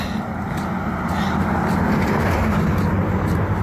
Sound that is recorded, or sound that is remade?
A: recorded